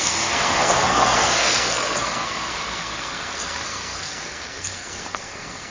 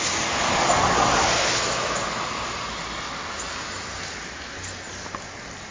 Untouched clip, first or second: second